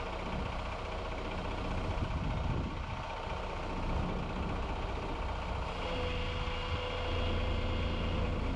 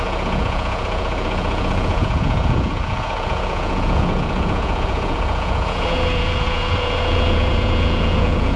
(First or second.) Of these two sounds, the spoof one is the second